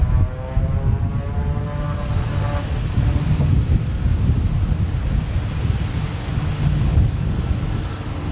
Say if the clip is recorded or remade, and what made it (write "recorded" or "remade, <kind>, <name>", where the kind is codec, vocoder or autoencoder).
recorded